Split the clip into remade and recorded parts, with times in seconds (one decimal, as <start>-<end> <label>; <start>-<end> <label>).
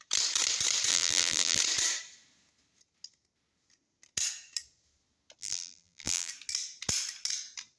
0.0-0.9 recorded; 0.9-1.6 remade; 1.6-5.4 recorded; 5.4-6.3 remade; 6.3-7.8 recorded